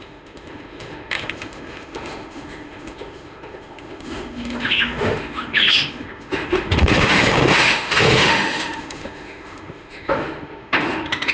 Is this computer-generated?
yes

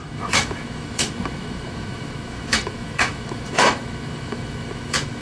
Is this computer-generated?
yes